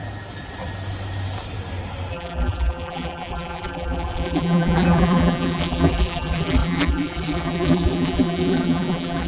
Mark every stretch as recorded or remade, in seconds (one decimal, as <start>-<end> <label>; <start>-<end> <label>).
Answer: 0.0-2.1 recorded; 2.1-9.3 remade